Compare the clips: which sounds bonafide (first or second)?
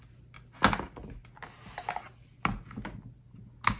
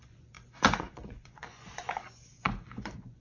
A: first